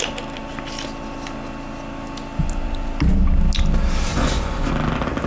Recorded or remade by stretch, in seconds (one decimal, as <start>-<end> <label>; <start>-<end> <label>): 0.0-4.1 recorded; 4.1-4.7 remade; 4.7-5.3 recorded

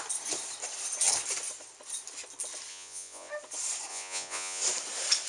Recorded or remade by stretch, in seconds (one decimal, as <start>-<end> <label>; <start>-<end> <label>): 0.0-2.7 recorded; 2.7-3.3 remade; 3.3-3.9 recorded; 3.9-4.6 remade; 4.6-5.3 recorded

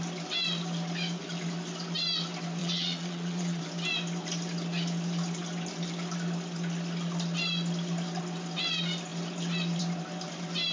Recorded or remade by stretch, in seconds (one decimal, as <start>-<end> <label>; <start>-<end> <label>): 0.0-2.6 recorded; 2.6-3.6 remade; 3.6-10.7 recorded

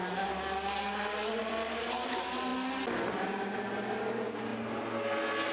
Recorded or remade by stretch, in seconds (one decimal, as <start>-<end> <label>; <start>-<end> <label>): 0.0-5.5 recorded

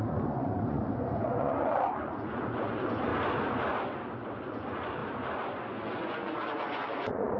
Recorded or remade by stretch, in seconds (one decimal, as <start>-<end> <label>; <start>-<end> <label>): 0.0-3.1 remade; 3.1-4.4 recorded; 4.4-5.0 remade; 5.0-5.8 recorded; 5.8-7.4 remade

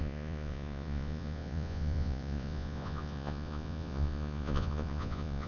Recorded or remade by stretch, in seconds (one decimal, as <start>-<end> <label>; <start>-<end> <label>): 0.0-5.5 remade

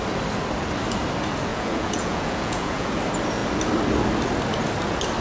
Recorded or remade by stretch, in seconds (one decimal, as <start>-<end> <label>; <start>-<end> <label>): 0.0-1.5 recorded; 1.5-3.0 remade; 3.0-5.2 recorded